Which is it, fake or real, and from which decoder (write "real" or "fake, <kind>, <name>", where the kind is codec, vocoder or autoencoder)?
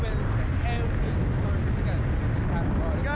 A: real